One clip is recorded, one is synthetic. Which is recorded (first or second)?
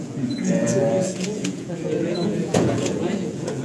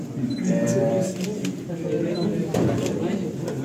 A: second